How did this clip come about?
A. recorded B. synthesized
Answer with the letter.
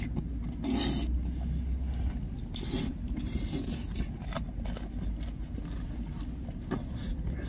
A